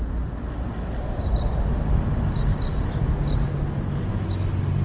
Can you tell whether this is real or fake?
real